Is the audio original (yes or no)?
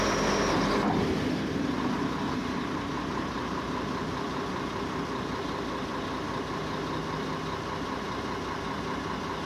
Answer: yes